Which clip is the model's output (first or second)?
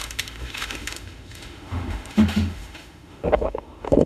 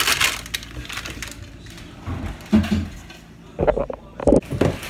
first